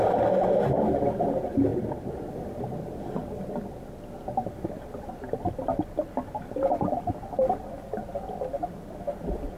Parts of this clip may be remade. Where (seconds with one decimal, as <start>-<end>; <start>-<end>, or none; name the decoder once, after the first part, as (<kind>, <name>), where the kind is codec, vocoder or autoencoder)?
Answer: 1.7-2.3 (vocoder, BigVGAN v2)